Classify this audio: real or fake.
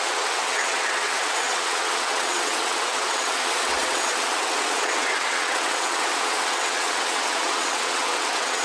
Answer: fake